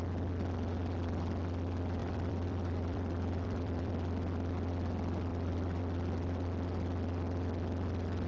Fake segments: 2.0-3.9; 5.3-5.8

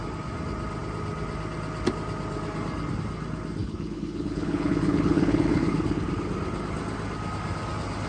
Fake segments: 3.6-6.1

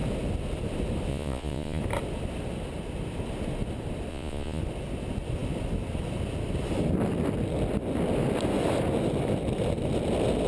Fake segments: 1.1-1.8; 4.1-4.6

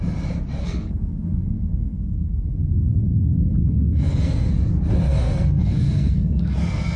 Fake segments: 0.6-4.5; 5.1-7.0

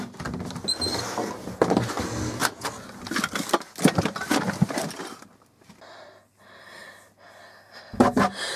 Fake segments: 4.8-5.6

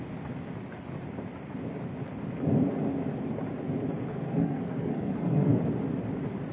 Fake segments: 4.1-5.6

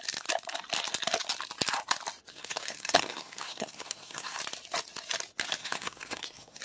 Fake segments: 2.3-4.4; 5.6-6.6